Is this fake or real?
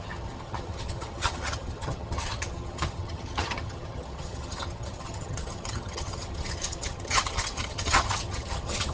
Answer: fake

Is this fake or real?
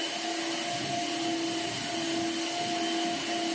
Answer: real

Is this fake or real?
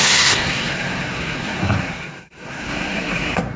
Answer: fake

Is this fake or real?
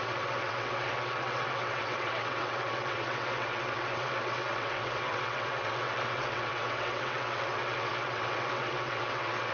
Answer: fake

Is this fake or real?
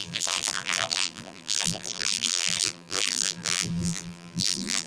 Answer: fake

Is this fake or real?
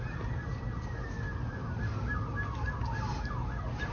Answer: real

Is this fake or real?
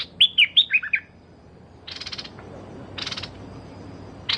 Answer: real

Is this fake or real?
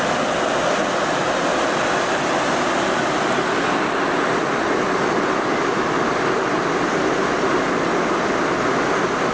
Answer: real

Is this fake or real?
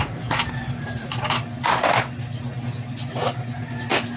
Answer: real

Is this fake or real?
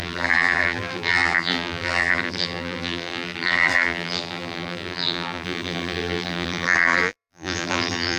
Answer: fake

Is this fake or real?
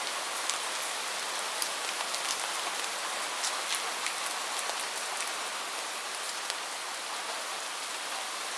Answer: real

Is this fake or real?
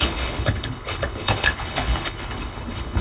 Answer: fake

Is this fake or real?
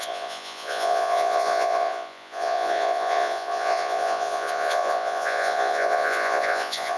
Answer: fake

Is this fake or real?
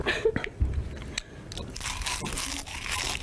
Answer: real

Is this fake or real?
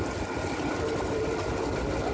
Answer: real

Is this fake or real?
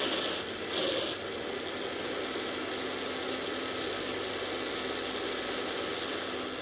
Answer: real